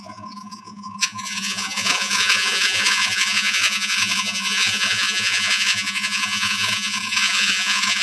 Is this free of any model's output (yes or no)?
no